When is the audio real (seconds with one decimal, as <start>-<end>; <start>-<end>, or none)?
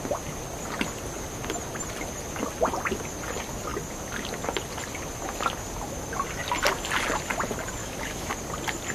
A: 0.0-7.8; 8.3-8.9